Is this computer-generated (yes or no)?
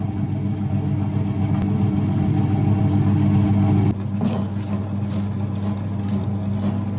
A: no